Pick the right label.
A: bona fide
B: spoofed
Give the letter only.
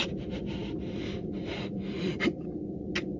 A